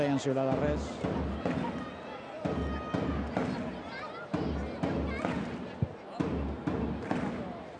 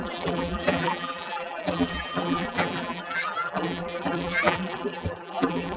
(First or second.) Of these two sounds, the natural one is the first